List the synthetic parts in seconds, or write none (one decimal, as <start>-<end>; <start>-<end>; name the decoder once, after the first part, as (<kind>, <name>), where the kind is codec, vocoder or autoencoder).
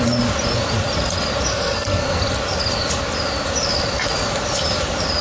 1.5-2.2 (codec, SNAC)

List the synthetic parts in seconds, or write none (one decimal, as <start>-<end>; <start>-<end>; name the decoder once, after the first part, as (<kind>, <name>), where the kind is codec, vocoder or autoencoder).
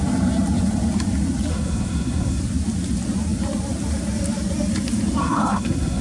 1.5-2.4 (codec, SNAC); 5.2-6.0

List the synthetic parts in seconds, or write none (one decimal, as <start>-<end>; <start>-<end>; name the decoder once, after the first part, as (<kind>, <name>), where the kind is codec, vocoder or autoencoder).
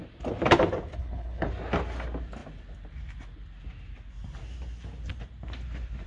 1.0-1.5 (codec, HILCodec)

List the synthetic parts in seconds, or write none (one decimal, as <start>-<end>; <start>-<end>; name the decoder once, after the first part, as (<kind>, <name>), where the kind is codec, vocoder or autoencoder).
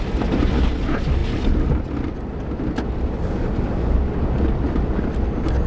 none